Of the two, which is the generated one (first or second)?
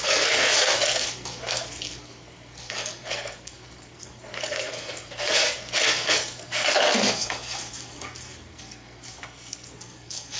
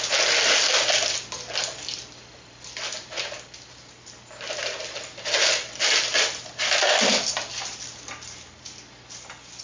first